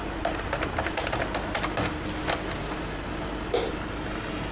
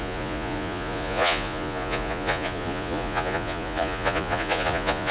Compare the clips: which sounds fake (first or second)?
second